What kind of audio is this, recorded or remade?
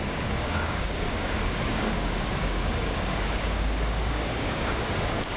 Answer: remade